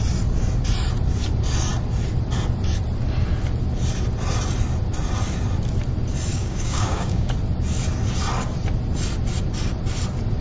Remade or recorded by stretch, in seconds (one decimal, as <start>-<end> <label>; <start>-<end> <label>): 0.0-6.3 recorded; 6.3-7.3 remade; 7.3-10.4 recorded